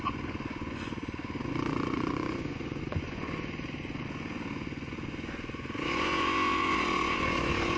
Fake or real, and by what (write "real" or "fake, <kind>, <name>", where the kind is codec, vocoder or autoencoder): fake, vocoder, Vocos